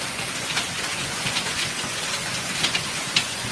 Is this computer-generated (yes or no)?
yes